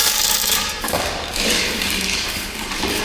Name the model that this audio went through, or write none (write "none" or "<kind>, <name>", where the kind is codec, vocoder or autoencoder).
codec, DAC